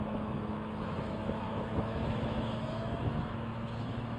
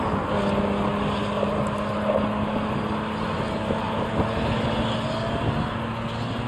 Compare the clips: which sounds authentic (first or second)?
second